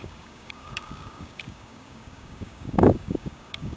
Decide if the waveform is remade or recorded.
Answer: remade